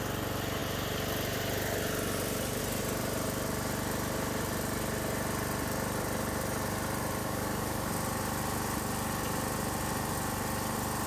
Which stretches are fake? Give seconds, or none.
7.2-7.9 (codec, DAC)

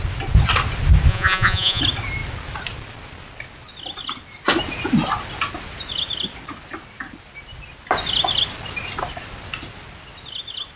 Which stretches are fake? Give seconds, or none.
1.1-1.8 (vocoder, Vocos)

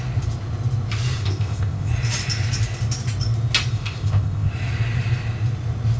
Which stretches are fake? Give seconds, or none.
1.2-1.9 (codec, ZipCodec); 3.7-4.5

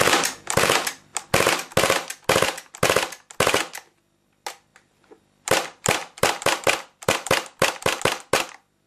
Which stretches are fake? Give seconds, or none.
4.7-8.0 (vocoder, BigVGAN v2)

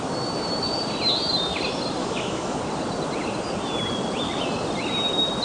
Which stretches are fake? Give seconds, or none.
2.0-2.6 (autoencoder, DAC-VAE)